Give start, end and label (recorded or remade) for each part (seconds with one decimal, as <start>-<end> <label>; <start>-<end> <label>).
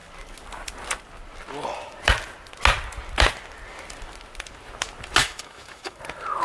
0.0-5.2 recorded; 5.2-6.0 remade; 6.0-6.4 recorded